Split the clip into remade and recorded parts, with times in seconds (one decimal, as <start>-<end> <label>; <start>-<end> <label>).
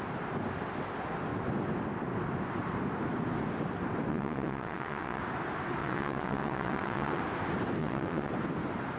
0.0-4.1 recorded; 4.1-5.2 remade; 5.2-5.8 recorded; 5.8-7.2 remade; 7.2-7.8 recorded; 7.8-8.3 remade; 8.3-9.0 recorded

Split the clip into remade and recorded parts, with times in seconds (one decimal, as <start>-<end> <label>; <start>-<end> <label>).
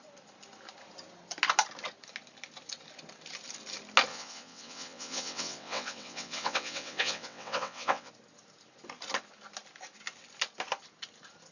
0.0-4.1 recorded; 4.1-8.1 remade; 8.1-11.5 recorded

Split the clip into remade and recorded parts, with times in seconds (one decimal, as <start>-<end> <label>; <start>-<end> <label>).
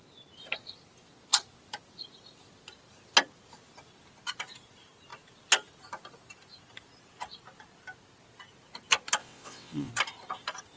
0.0-9.2 recorded; 9.2-9.9 remade; 9.9-10.8 recorded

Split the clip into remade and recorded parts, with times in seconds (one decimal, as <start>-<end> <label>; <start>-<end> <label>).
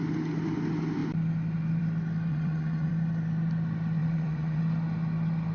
0.0-2.3 recorded; 2.3-2.9 remade; 2.9-4.0 recorded; 4.0-4.6 remade; 4.6-5.5 recorded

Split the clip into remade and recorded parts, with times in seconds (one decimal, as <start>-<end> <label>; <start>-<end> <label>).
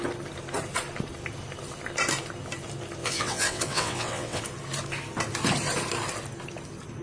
0.0-3.0 recorded; 3.0-4.4 remade; 4.4-7.0 recorded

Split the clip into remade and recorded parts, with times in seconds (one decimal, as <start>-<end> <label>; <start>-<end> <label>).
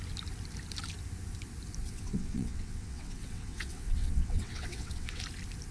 0.0-1.8 recorded; 1.8-5.2 remade; 5.2-5.7 recorded